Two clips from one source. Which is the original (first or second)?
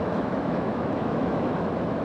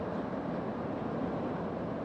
second